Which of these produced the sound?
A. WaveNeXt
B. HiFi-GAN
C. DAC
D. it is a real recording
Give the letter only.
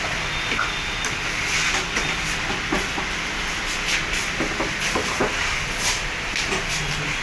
D